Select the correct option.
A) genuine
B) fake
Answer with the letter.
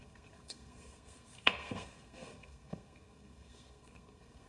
B